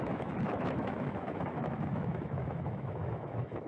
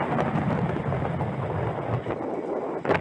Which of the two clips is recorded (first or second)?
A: second